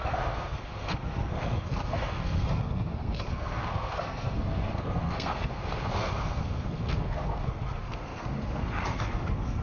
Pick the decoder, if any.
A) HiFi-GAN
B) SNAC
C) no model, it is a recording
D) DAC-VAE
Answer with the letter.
B